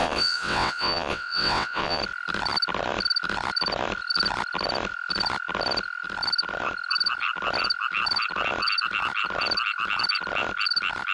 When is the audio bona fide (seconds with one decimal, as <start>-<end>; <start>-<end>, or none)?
2.0-11.1